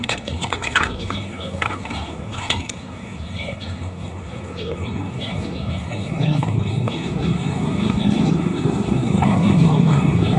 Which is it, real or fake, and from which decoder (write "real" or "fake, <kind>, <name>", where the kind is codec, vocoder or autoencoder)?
fake, codec, SNAC